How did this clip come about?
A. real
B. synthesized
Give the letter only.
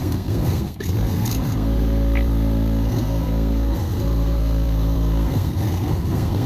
B